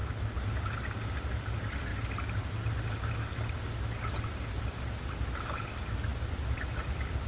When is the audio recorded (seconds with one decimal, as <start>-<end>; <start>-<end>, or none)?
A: 0.0-7.3